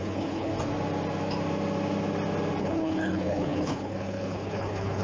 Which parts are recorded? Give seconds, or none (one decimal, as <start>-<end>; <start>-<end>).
0.5-2.6